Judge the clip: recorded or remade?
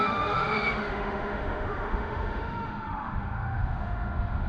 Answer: remade